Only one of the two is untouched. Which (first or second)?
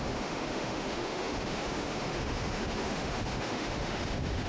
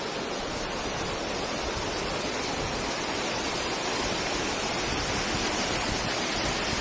second